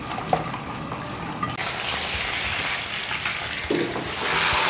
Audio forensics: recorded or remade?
recorded